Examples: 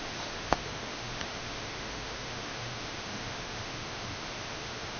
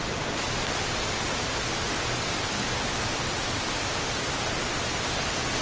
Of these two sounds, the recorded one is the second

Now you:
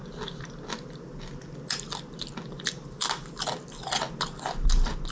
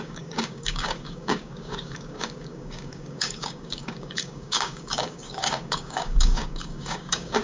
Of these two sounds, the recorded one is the first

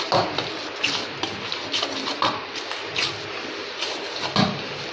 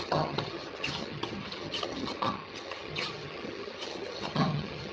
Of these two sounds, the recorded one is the first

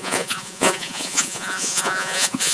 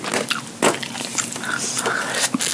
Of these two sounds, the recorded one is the second